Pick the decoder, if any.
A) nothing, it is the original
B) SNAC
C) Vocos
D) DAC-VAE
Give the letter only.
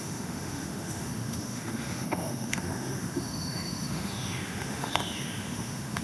D